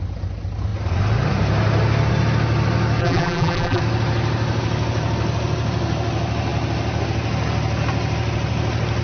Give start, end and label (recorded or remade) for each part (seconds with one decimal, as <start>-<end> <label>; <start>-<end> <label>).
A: 0.0-3.0 recorded; 3.0-3.8 remade; 3.8-9.0 recorded